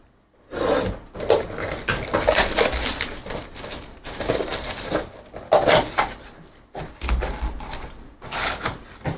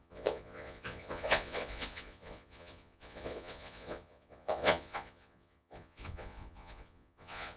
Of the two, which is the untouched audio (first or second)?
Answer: first